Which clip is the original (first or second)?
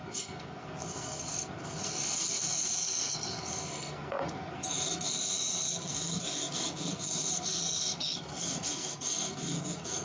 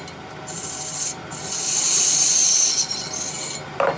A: second